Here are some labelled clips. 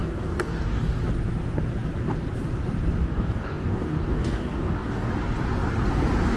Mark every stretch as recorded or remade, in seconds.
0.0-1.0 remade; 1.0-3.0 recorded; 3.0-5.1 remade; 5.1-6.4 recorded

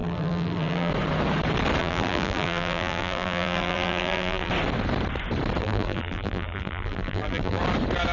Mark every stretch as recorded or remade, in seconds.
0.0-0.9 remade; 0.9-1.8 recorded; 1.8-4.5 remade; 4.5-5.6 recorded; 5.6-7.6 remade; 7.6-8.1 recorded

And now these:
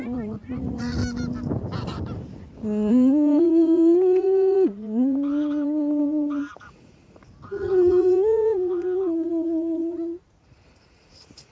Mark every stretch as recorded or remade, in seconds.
0.0-1.0 remade; 1.0-2.9 recorded; 2.9-11.5 remade

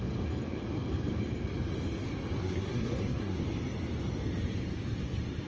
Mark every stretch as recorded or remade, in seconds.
0.0-2.4 recorded; 2.4-3.4 remade; 3.4-5.5 recorded

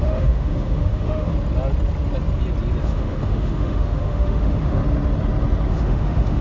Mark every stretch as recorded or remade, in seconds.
0.0-1.3 remade; 1.3-2.8 recorded; 2.8-4.8 remade; 4.8-5.7 recorded; 5.7-6.4 remade

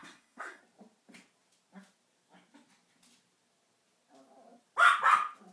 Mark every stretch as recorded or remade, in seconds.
0.0-0.6 remade; 0.6-5.5 recorded